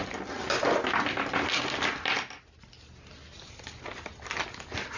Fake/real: real